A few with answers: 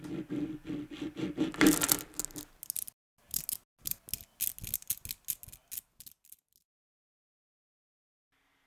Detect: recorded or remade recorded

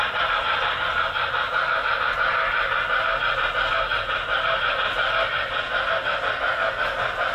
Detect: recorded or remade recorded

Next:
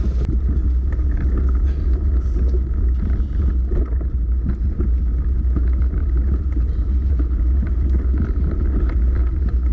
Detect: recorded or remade recorded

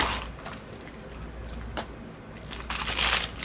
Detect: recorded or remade recorded